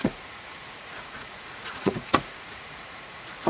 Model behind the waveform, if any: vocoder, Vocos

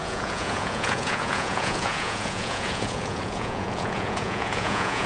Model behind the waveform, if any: vocoder, Vocos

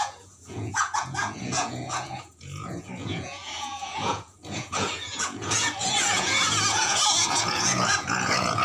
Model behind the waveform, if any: vocoder, Vocos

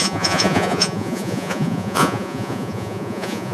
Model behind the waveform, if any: vocoder, Vocos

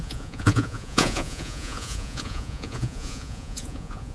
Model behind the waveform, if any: vocoder, Vocos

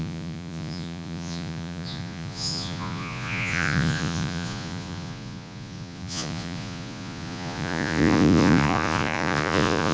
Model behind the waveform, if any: vocoder, Vocos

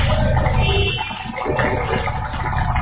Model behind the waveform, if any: none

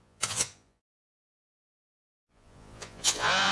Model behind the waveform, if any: vocoder, Vocos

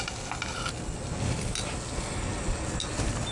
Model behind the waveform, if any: none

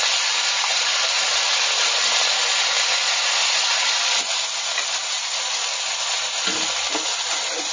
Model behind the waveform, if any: none